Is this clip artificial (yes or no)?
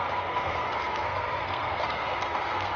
yes